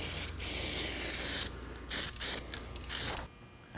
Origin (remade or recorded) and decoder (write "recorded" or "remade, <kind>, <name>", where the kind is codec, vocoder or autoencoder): recorded